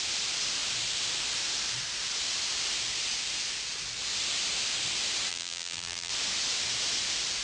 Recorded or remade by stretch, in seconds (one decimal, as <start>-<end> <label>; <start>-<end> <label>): 0.0-5.3 recorded; 5.3-6.1 remade; 6.1-7.4 recorded